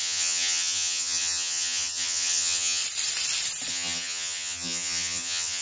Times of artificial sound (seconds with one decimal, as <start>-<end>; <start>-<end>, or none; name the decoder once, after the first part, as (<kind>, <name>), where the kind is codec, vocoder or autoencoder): 0.0-2.8 (vocoder, HiFi-GAN); 3.7-5.6